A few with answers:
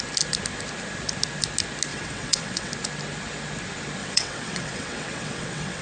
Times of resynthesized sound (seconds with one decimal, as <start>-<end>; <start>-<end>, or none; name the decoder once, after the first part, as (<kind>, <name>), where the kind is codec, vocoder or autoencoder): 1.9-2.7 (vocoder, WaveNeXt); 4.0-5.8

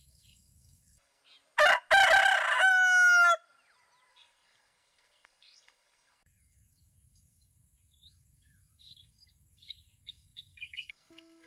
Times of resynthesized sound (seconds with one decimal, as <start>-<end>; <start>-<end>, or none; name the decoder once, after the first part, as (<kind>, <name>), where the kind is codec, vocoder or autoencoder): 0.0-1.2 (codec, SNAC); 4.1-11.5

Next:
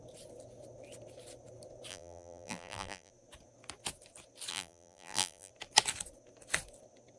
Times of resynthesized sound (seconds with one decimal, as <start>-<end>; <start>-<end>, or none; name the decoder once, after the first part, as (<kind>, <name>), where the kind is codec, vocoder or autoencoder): 1.9-3.1 (vocoder, BigVGAN v2); 4.5-5.5